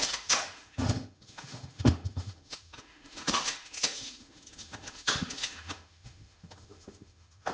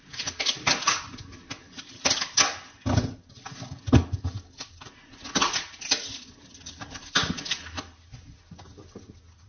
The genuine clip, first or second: second